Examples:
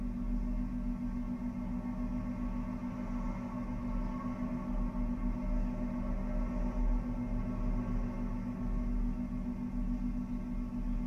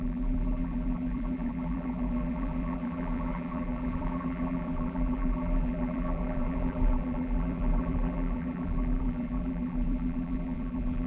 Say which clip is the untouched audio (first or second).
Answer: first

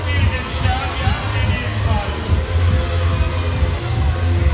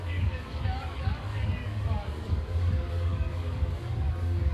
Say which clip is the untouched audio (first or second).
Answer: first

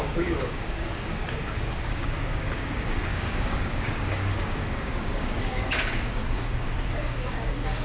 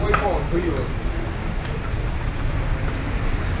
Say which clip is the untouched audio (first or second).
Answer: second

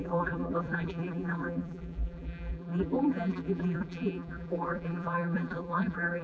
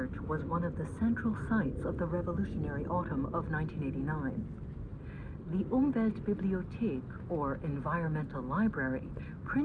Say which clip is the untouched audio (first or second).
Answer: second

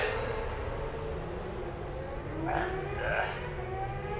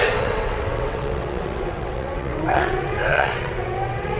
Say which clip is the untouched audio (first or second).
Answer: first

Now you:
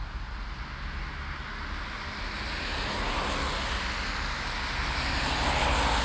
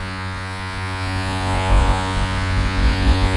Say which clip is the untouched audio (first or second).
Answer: first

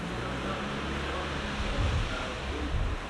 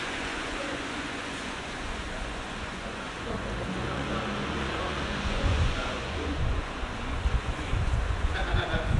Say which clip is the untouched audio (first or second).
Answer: first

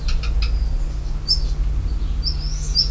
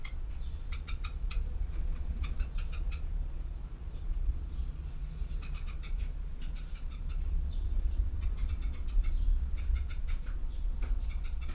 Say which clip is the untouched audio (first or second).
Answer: first